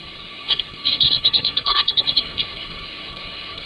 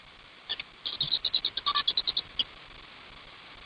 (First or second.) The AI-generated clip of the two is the first